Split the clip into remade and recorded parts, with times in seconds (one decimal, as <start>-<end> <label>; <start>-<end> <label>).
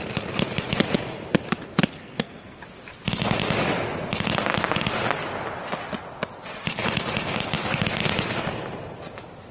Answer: 0.0-2.0 recorded; 2.0-2.6 remade; 2.6-9.5 recorded